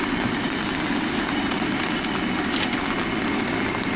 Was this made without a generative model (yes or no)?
yes